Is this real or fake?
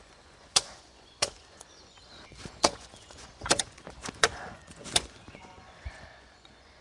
fake